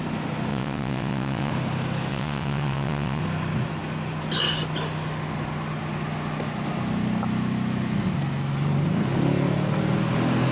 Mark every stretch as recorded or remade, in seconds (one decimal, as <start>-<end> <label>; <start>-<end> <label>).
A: 0.0-0.5 recorded; 0.5-1.5 remade; 1.5-2.1 recorded; 2.1-3.2 remade; 3.2-10.5 recorded